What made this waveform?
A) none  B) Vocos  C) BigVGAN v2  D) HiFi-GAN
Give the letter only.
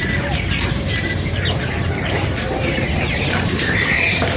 C